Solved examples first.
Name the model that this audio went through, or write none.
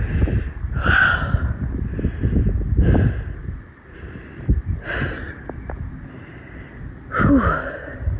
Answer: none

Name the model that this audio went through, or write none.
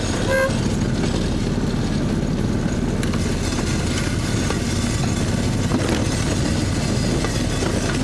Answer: none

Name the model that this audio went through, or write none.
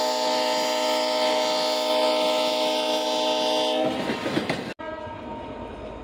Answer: none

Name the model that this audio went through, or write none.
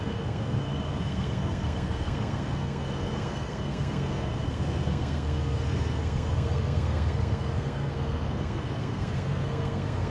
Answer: codec, SNAC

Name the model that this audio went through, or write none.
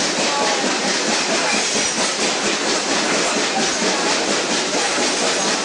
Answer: none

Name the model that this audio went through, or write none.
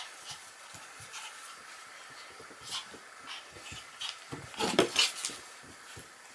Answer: none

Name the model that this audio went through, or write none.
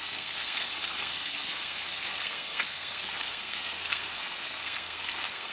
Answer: codec, SNAC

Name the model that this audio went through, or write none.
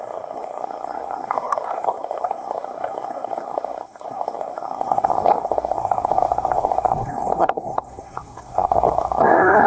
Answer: codec, SNAC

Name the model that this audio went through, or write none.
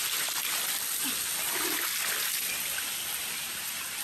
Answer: none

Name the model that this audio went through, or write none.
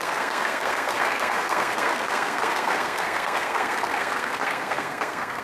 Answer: codec, SNAC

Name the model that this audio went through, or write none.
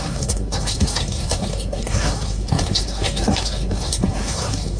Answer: codec, SNAC